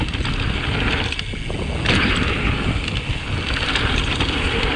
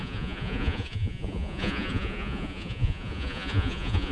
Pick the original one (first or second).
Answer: first